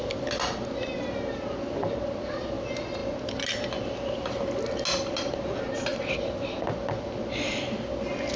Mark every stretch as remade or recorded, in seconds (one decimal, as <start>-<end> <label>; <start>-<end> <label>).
0.0-8.4 recorded